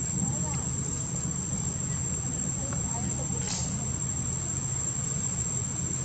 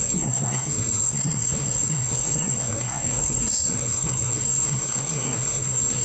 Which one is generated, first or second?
second